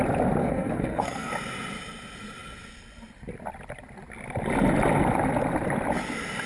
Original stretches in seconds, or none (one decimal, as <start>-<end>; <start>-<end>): 0.0-0.4; 1.3-6.5